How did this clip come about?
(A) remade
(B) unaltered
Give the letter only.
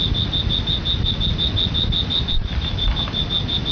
B